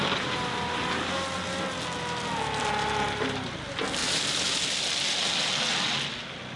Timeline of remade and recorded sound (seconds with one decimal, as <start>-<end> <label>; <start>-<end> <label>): 0.0-4.0 recorded; 4.0-4.6 remade; 4.6-6.6 recorded